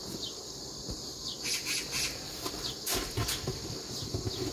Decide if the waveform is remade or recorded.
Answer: recorded